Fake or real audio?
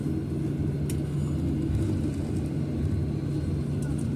real